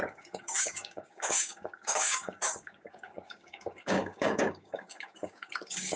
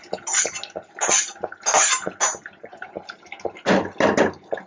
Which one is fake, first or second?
first